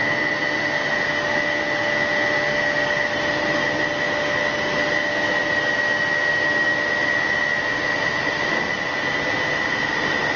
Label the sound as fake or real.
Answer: real